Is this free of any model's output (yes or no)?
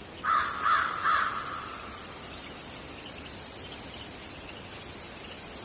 yes